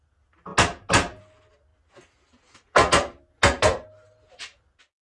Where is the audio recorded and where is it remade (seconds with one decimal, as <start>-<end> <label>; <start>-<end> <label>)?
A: 0.0-5.2 recorded